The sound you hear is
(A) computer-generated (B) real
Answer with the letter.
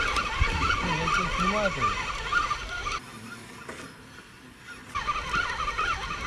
B